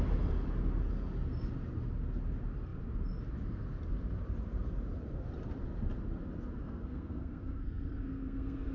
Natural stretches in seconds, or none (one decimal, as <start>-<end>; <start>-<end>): 0.0-6.6